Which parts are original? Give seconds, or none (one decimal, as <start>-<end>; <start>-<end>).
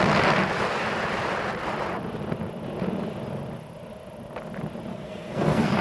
0.0-4.9